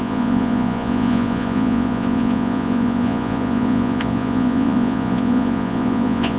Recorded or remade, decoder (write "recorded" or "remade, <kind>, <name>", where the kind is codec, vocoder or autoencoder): remade, vocoder, Vocos